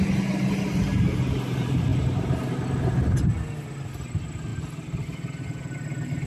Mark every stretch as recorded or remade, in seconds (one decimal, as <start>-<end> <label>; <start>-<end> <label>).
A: 0.0-6.3 recorded